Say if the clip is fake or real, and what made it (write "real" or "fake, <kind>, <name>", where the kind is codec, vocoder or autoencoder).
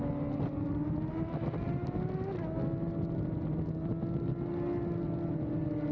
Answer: real